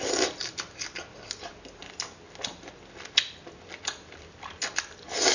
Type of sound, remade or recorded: recorded